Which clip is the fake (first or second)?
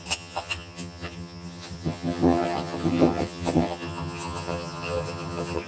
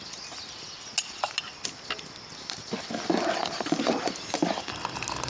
first